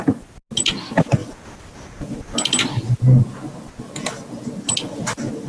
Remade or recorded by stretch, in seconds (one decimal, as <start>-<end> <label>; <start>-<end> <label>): 0.0-5.5 recorded